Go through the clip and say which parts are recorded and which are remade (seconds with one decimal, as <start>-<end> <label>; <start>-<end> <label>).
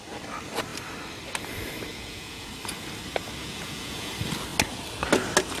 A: 0.0-1.9 recorded; 1.9-2.5 remade; 2.5-3.4 recorded; 3.4-4.1 remade; 4.1-5.6 recorded